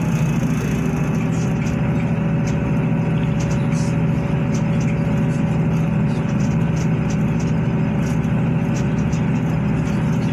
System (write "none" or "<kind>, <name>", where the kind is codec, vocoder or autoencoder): none